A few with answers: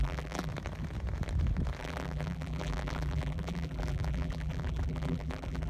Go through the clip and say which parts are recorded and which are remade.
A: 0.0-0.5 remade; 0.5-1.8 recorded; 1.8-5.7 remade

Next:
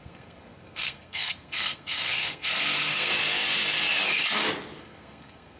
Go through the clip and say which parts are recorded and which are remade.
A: 0.0-3.1 remade; 3.1-4.8 recorded; 4.8-5.6 remade

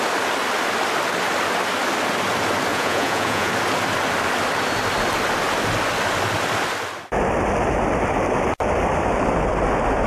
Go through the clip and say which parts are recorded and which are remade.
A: 0.0-2.7 recorded; 2.7-3.5 remade; 3.5-10.1 recorded

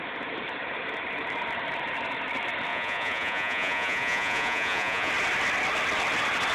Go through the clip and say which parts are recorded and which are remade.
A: 0.0-2.7 recorded; 2.7-5.1 remade; 5.1-6.5 recorded

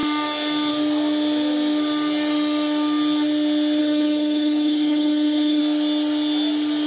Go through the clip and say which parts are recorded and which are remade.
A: 0.0-3.8 recorded; 3.8-5.6 remade; 5.6-6.9 recorded

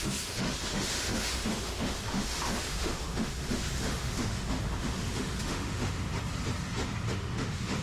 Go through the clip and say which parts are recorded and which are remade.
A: 0.0-6.1 remade; 6.1-7.1 recorded; 7.1-7.8 remade